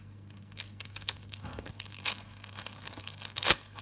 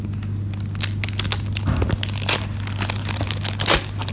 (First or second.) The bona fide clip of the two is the second